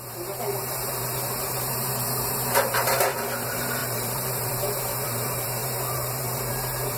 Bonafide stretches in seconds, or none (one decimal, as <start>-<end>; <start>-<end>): none